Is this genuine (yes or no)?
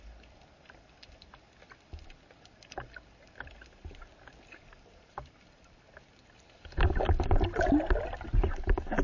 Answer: yes